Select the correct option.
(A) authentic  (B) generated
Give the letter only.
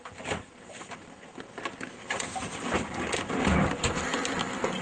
A